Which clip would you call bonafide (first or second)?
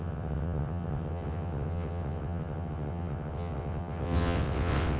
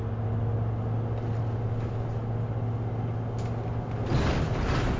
second